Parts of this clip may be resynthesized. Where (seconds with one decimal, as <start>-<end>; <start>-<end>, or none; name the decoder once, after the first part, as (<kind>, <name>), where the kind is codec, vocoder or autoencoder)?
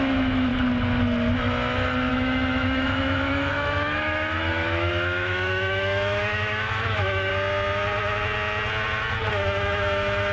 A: 0.0-0.5 (autoencoder, DAC-VAE); 2.1-7.3; 9.3-10.3